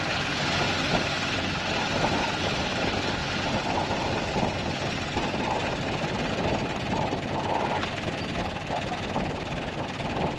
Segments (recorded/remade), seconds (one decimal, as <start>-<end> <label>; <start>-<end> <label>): 0.0-10.4 recorded